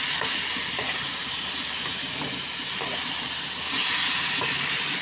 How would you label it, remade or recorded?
recorded